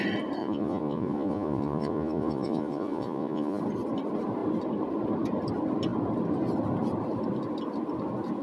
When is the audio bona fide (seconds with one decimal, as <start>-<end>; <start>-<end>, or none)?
0.0-0.4; 3.6-8.4